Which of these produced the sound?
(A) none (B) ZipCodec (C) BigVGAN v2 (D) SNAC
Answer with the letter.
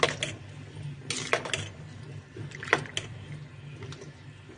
A